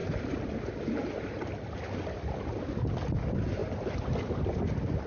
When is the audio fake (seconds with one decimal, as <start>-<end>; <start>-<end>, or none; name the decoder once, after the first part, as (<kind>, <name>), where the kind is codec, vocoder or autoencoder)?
none